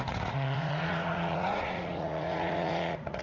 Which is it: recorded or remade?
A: remade